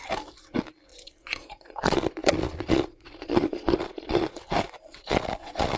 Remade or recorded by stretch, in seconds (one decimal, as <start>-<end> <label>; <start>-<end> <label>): 0.0-0.9 recorded; 0.9-4.4 remade; 4.4-4.9 recorded; 4.9-5.8 remade